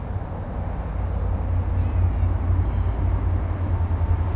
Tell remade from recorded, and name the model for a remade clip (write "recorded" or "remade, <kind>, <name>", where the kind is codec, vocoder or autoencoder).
recorded